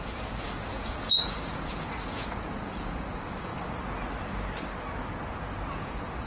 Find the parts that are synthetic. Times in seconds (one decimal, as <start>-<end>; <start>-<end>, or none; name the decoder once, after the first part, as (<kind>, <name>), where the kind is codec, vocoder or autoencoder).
0.0-3.5 (vocoder, Vocos); 5.7-6.3